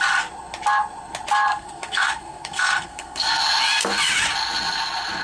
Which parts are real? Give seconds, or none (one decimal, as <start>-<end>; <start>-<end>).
0.0-1.5; 3.4-5.2